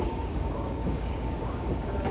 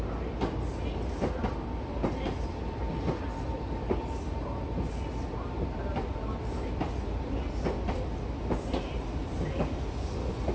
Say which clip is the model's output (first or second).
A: first